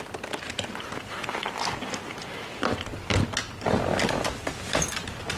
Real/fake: real